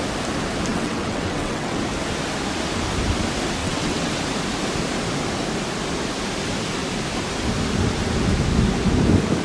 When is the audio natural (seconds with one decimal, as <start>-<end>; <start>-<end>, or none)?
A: 0.0-0.7; 1.8-3.6; 4.1-9.4